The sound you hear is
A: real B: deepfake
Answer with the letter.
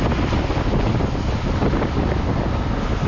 A